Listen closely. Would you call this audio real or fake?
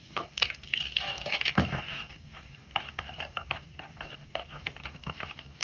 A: fake